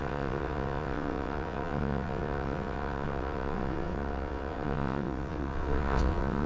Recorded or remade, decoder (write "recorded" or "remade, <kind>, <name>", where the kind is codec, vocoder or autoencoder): remade, vocoder, WaveNeXt